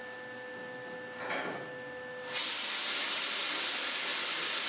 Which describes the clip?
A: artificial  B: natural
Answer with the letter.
B